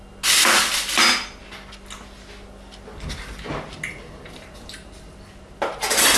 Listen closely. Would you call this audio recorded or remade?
recorded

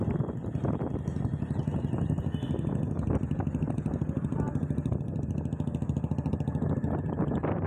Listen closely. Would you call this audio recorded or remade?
recorded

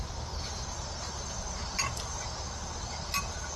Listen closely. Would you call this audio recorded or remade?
recorded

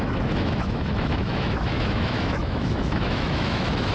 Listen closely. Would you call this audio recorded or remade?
remade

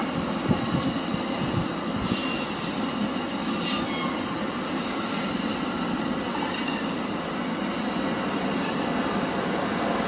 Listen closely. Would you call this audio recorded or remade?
recorded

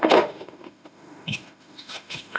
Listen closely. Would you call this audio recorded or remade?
remade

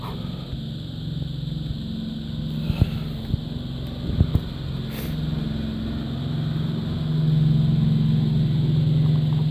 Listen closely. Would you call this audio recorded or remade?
recorded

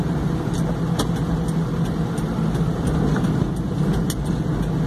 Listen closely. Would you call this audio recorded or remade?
recorded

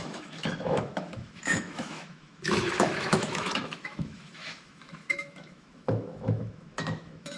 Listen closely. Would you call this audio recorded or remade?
remade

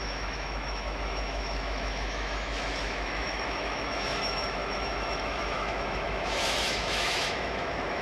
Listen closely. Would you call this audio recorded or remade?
remade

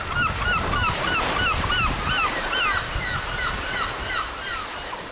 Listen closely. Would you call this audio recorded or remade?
recorded